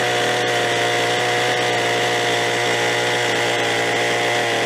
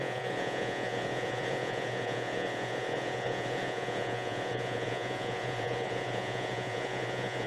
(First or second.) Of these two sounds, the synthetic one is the second